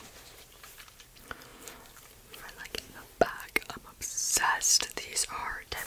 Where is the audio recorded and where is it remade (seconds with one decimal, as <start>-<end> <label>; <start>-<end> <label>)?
0.0-1.5 remade; 1.5-2.0 recorded; 2.0-2.6 remade; 2.6-3.3 recorded; 3.3-5.9 remade